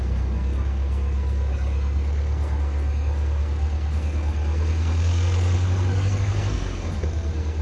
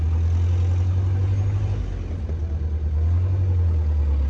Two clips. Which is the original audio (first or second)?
second